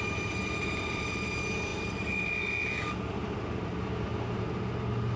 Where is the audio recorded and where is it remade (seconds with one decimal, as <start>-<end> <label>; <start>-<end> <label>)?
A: 0.0-1.7 remade; 1.7-3.1 recorded; 3.1-5.2 remade